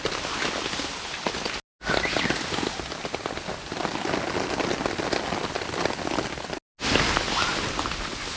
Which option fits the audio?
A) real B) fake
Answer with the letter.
A